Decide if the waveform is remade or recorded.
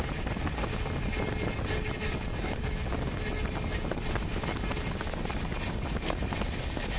recorded